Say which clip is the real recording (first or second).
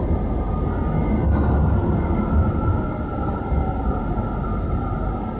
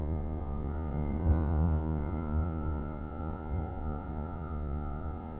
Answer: first